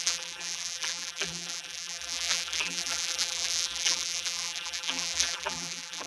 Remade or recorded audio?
remade